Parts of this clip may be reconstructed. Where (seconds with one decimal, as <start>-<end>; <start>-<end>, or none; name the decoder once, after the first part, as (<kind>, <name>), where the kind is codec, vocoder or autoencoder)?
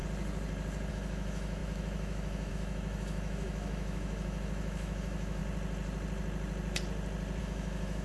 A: 0.9-5.4 (autoencoder, DAC-VAE); 7.4-8.0